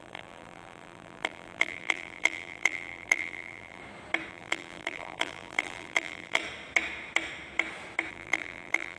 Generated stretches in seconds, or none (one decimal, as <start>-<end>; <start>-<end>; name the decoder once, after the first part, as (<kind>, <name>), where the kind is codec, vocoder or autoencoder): 0.0-3.8 (vocoder, BigVGAN v2); 4.3-6.4; 8.1-9.0